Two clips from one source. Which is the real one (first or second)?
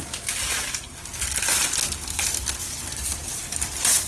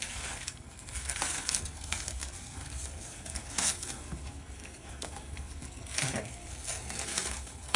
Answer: first